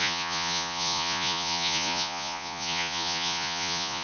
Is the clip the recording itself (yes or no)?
no